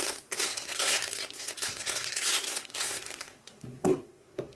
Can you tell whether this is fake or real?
fake